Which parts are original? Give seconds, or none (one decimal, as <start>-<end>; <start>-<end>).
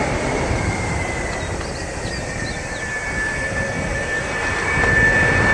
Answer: 0.0-3.9; 4.5-5.5